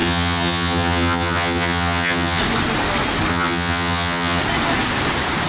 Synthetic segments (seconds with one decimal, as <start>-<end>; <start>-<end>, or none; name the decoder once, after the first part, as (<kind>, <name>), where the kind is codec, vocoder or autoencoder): 0.0-2.4 (vocoder, HiFi-GAN); 3.3-4.4